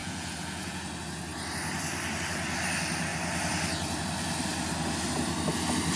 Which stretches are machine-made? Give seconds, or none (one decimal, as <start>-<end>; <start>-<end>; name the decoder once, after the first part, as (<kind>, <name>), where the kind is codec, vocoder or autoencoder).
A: 0.0-0.8 (vocoder, Vocos)